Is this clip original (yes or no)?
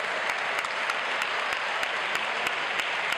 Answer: yes